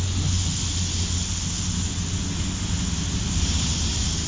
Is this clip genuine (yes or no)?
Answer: yes